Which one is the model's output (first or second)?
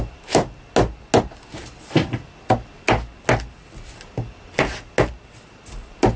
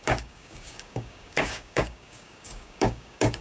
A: second